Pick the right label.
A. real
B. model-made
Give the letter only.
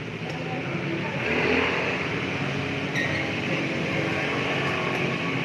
A